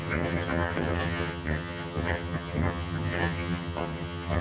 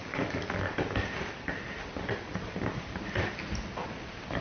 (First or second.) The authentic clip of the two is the second